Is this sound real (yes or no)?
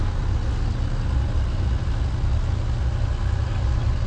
yes